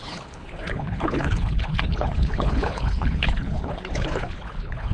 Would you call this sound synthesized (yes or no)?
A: yes